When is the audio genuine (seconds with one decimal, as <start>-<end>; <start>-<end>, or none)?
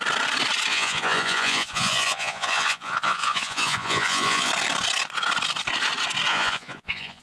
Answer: 0.0-0.7; 4.5-6.3